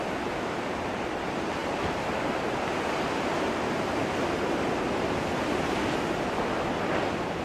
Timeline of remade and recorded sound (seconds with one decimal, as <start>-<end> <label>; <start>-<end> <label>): 0.0-7.4 recorded